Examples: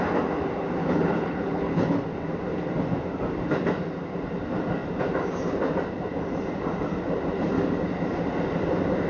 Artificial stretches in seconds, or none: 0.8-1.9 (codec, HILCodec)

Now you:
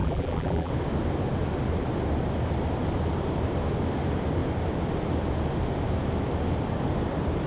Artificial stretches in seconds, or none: 0.0-0.7 (vocoder, BigVGAN v2)

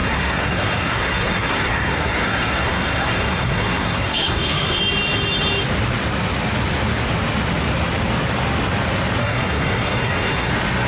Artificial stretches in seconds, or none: 0.0-4.8 (codec, SNAC); 9.2-10.5

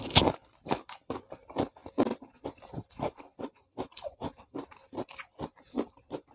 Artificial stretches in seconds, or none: none

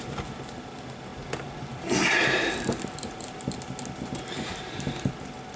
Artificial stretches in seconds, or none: 1.1-3.4 (vocoder, BigVGAN v2); 4.5-5.6

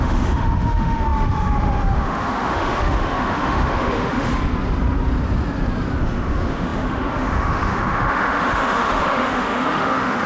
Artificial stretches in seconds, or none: 0.0-4.3 (autoencoder, DAC-VAE); 6.0-10.3

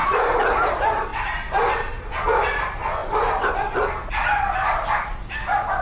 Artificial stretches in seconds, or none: 0.0-0.7 (vocoder, BigVGAN v2); 1.1-2.2; 3.0-3.6